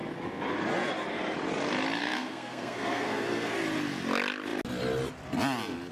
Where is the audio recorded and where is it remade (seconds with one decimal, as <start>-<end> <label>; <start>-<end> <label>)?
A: 0.0-2.0 recorded; 2.0-3.6 remade; 3.6-5.9 recorded